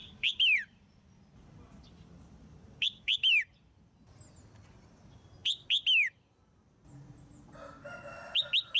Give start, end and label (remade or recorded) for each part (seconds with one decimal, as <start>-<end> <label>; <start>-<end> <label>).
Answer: 0.0-3.4 remade; 3.4-8.8 recorded